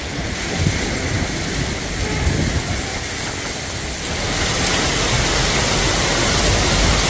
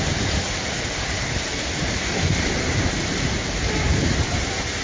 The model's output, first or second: second